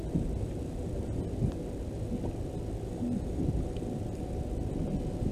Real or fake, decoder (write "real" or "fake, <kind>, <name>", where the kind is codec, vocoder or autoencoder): real